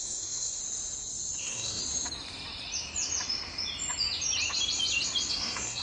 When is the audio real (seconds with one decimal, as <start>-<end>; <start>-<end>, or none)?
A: 0.6-1.4; 1.8-5.3